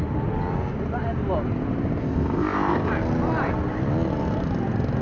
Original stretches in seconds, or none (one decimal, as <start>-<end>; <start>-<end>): 0.0-2.0; 2.9-5.0